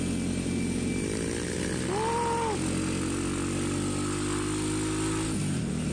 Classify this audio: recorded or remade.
recorded